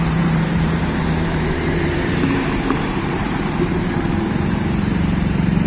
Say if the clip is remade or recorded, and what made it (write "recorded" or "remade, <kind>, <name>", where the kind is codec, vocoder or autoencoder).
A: remade, vocoder, BigVGAN v2